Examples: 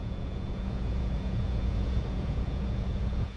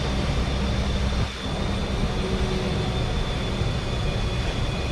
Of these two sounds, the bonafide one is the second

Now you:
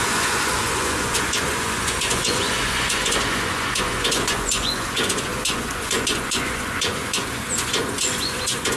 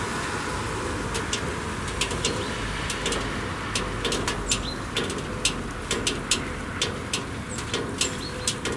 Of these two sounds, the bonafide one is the second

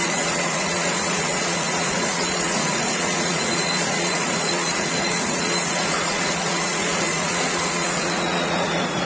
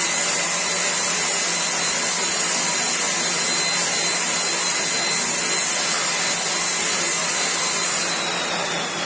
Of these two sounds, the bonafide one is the second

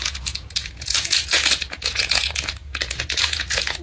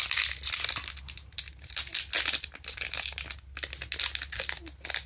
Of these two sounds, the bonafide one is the second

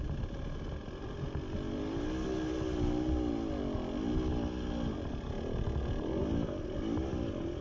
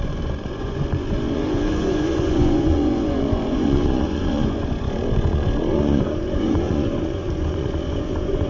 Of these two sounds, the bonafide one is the first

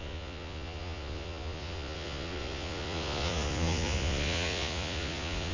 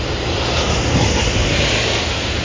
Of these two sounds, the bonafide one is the second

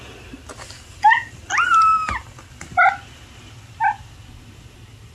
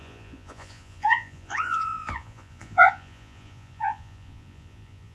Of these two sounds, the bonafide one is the first